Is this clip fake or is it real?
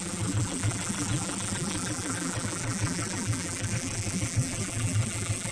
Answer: fake